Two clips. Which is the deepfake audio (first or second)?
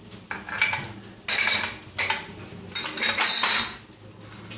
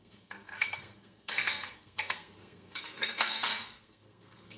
second